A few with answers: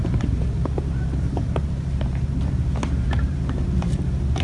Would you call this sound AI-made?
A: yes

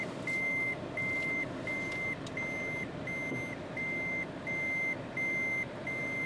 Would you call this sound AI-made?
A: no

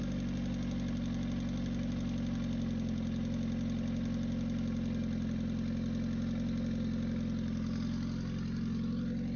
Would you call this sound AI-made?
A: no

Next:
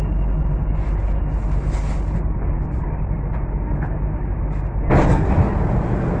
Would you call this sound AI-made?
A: no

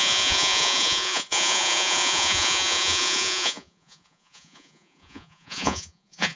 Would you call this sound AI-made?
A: yes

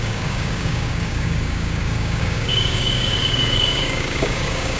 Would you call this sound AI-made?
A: yes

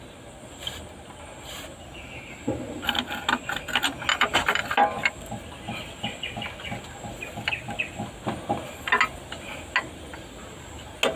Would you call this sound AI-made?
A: no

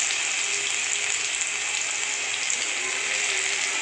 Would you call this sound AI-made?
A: no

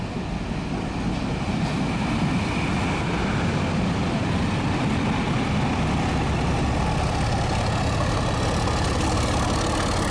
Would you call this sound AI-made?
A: no